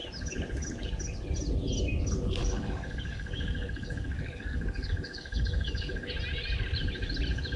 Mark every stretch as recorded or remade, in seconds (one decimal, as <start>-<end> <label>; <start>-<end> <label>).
0.0-2.4 recorded; 2.4-6.1 remade; 6.1-7.6 recorded